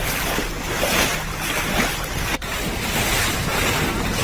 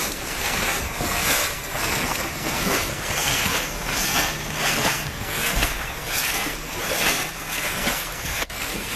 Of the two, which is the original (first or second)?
first